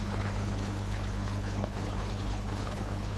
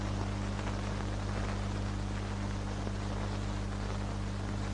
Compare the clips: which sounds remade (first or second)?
first